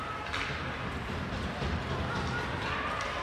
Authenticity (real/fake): real